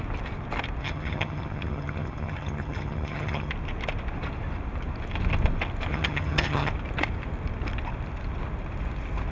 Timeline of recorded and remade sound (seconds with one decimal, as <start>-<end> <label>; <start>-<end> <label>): 0.0-0.8 recorded; 0.8-3.5 remade; 3.5-5.9 recorded; 5.9-6.7 remade; 6.7-9.3 recorded